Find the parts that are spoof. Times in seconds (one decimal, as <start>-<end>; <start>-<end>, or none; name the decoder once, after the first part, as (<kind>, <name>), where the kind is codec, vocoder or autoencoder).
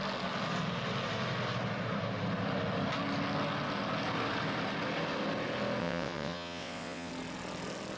5.8-7.1 (vocoder, WaveNeXt)